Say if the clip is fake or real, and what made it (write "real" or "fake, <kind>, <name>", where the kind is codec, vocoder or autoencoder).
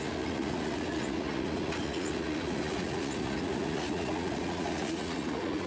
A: fake, vocoder, Vocos